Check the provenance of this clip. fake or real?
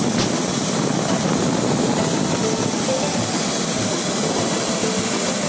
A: real